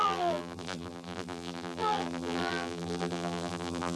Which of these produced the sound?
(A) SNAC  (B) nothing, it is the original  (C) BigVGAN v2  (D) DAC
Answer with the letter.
C